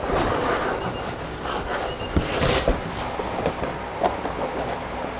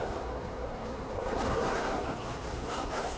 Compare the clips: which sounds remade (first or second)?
second